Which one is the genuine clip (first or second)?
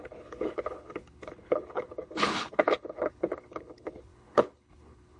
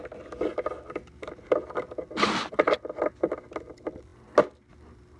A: second